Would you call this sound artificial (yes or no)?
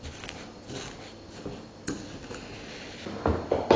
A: no